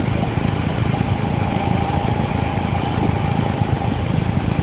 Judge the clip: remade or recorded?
recorded